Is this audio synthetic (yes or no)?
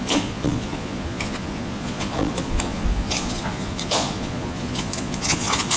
yes